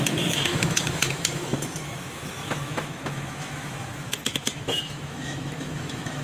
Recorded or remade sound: remade